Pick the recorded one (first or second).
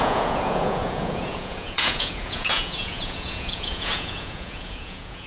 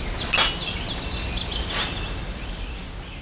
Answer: second